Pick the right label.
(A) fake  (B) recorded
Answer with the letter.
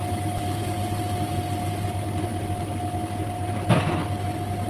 B